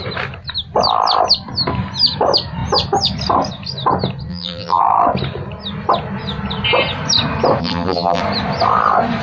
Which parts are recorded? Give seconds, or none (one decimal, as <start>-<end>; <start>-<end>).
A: 0.0-4.3; 4.8-7.6; 8.2-9.2

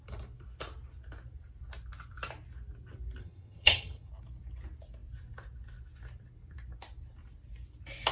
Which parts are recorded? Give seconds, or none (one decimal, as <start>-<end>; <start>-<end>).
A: 0.0-3.2; 4.1-8.1

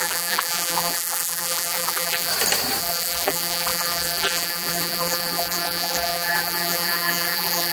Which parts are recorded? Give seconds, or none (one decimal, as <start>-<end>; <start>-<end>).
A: 2.3-2.8

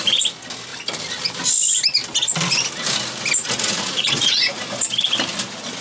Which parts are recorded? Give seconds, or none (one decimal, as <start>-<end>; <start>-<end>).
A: 0.0-3.4; 4.6-5.8

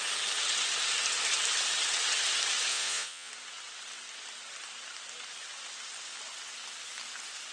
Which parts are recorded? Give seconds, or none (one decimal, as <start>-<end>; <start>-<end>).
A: 0.0-2.7; 3.3-7.5